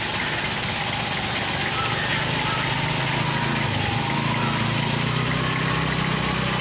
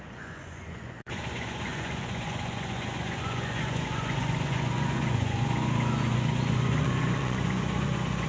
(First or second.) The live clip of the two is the first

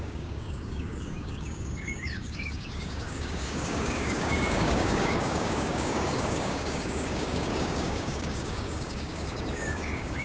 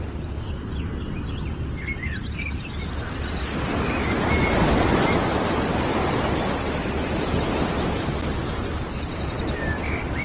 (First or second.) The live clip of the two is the second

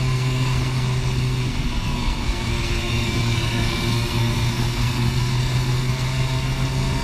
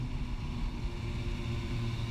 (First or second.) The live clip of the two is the second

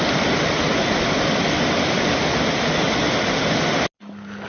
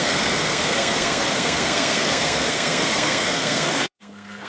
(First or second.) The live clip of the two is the first